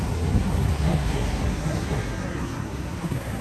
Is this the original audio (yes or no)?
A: no